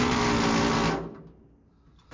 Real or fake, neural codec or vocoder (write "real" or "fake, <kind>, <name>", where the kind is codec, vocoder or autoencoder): real